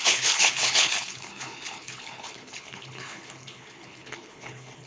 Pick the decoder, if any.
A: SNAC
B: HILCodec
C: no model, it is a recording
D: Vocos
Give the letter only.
B